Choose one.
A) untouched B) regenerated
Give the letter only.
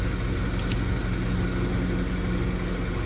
A